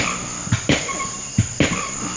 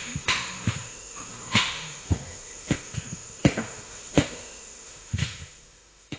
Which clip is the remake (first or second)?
second